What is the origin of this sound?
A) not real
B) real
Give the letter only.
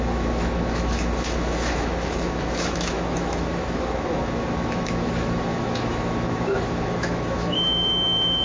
A